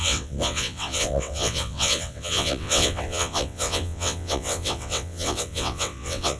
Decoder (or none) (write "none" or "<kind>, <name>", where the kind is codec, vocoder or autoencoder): vocoder, WaveNeXt